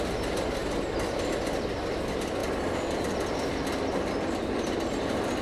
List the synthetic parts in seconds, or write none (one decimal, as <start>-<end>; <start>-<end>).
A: none